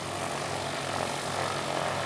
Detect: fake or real real